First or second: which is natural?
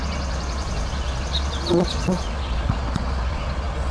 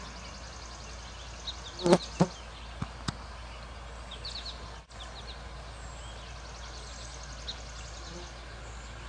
second